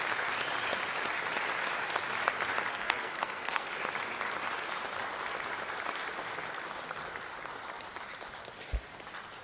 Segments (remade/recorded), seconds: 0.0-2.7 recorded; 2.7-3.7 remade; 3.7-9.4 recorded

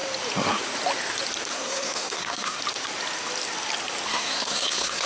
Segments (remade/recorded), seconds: 0.0-1.5 recorded; 1.5-2.6 remade; 2.6-4.1 recorded; 4.1-5.1 remade

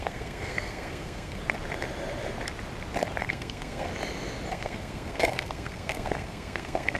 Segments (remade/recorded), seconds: 0.0-1.4 remade; 1.4-3.2 recorded; 3.2-3.9 remade; 3.9-4.5 recorded; 4.5-7.0 remade

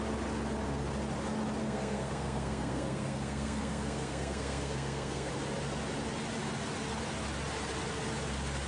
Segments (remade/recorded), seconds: 0.0-1.6 recorded; 1.6-5.3 remade; 5.3-8.7 recorded

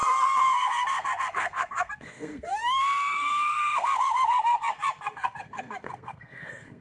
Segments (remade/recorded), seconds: 0.0-6.8 remade

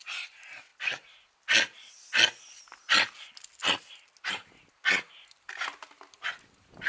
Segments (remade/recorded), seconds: 0.0-6.9 recorded